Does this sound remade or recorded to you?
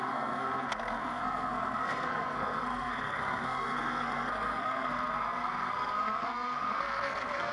remade